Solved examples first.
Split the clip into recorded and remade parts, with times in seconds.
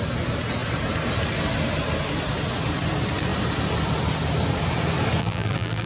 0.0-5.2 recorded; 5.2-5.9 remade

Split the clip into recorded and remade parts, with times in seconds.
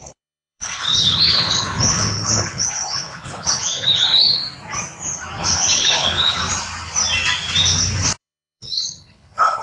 0.0-4.4 remade; 4.4-5.4 recorded; 5.4-6.4 remade; 6.4-8.2 recorded; 8.2-9.6 remade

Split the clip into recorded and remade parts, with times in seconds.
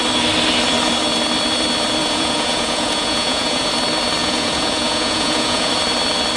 0.0-2.0 recorded; 2.0-3.7 remade; 3.7-4.2 recorded; 4.2-5.7 remade; 5.7-6.4 recorded